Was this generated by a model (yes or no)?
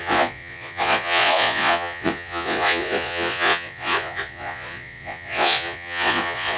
yes